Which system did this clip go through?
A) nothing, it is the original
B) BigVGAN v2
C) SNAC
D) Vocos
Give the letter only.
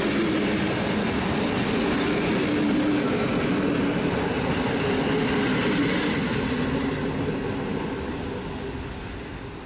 A